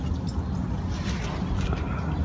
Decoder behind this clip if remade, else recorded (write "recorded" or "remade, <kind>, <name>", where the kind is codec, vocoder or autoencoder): recorded